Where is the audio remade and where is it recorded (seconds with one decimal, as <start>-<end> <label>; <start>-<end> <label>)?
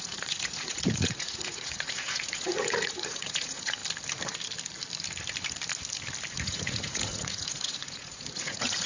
0.0-3.8 remade; 3.8-6.3 recorded; 6.3-8.9 remade